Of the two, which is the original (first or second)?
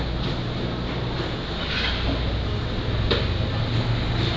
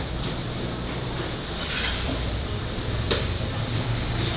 first